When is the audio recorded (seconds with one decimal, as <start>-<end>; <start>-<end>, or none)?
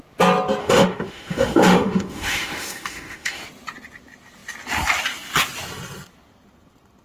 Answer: 0.0-0.6; 3.4-7.0